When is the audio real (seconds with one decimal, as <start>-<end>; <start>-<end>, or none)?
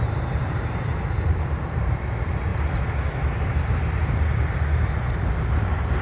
2.5-5.4